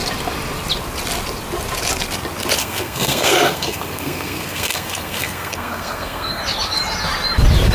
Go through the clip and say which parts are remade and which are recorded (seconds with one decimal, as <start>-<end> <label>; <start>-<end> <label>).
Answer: 0.0-2.6 recorded; 2.6-6.4 remade; 6.4-7.7 recorded